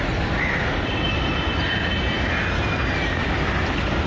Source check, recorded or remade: recorded